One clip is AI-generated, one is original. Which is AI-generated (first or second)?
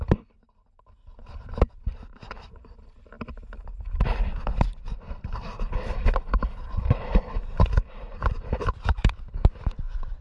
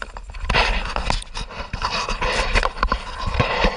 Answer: first